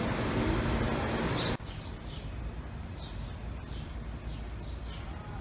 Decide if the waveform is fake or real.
real